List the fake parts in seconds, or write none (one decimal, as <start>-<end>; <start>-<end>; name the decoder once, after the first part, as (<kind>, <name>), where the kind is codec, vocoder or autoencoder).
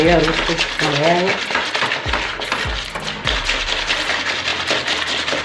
1.3-2.3 (vocoder, BigVGAN v2)